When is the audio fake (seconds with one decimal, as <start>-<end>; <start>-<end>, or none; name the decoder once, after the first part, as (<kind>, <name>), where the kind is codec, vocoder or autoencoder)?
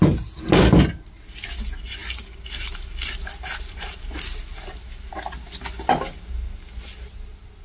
none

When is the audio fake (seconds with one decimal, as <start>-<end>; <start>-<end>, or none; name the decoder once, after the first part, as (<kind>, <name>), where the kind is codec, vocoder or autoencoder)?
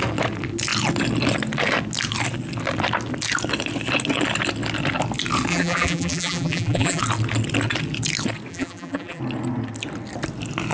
5.5-7.0 (vocoder, BigVGAN v2); 8.5-9.2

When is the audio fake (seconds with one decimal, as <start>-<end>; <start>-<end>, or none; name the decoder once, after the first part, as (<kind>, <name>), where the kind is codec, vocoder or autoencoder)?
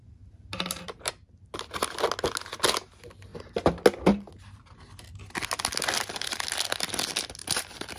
0.0-1.1 (vocoder, BigVGAN v2); 7.4-8.0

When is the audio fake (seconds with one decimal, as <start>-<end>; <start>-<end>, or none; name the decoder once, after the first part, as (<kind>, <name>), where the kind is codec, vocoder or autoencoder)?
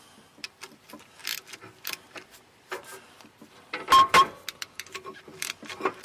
none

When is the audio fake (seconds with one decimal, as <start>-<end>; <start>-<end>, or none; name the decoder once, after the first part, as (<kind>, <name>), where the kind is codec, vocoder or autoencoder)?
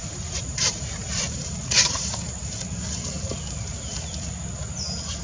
0.0-3.0 (vocoder, BigVGAN v2)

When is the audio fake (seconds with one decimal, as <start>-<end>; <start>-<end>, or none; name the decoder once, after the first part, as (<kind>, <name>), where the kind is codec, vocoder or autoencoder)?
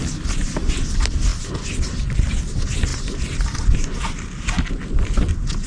2.9-5.2 (vocoder, BigVGAN v2)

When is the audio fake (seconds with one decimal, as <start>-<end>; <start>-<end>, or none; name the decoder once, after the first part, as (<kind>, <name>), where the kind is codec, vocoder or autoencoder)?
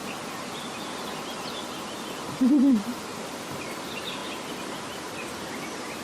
2.2-3.1 (vocoder, BigVGAN v2); 3.6-6.0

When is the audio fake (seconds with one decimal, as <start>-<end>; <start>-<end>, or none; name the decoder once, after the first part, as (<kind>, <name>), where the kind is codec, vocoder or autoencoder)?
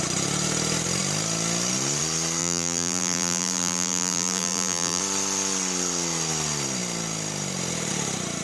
2.4-5.0 (vocoder, BigVGAN v2)